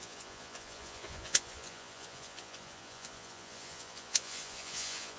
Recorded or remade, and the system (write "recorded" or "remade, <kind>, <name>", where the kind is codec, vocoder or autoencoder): remade, vocoder, Vocos